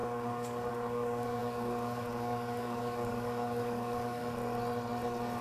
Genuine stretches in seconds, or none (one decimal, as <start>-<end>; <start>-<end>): 4.2-5.4

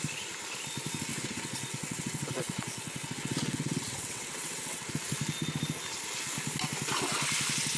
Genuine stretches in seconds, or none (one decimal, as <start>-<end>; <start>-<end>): 0.0-1.1; 4.9-7.8